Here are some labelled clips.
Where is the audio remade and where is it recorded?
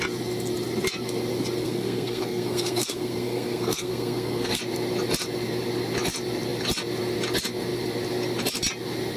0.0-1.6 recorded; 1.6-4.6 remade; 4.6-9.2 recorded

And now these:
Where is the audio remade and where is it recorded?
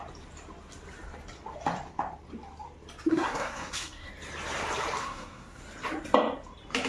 0.0-3.1 recorded; 3.1-4.1 remade; 4.1-5.0 recorded; 5.0-5.6 remade; 5.6-6.9 recorded